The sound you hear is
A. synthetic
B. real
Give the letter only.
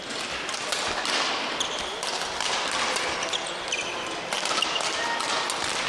B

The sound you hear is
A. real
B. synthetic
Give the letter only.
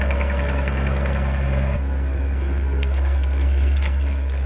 B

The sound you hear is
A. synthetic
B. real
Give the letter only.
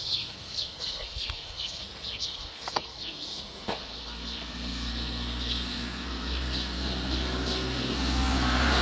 A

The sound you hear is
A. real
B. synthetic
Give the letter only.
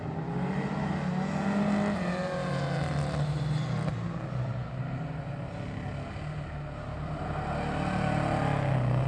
A